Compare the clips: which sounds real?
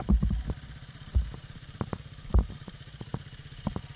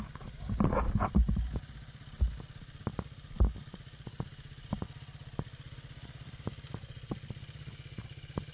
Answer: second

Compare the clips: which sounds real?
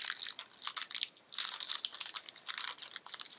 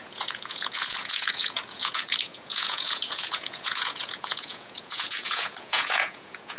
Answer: first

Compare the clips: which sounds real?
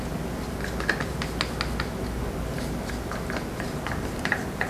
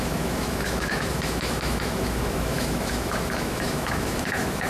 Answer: first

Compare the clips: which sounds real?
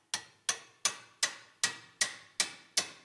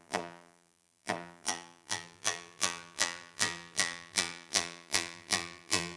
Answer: first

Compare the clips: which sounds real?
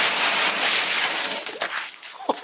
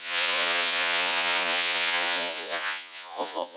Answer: first